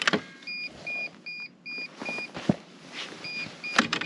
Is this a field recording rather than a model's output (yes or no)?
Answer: yes